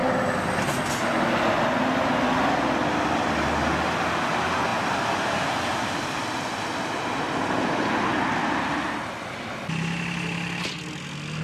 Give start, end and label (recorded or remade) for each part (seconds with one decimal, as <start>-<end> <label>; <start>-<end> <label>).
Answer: 0.0-11.4 recorded